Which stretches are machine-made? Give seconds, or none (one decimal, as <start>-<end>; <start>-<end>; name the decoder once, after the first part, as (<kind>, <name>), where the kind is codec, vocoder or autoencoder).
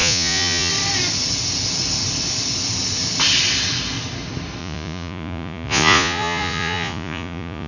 0.0-0.7 (vocoder, Vocos); 4.6-7.7